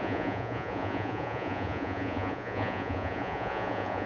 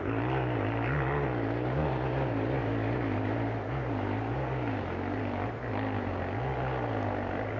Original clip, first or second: second